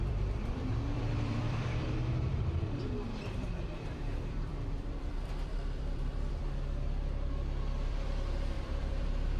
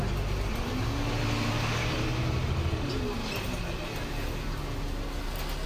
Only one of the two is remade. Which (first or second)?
first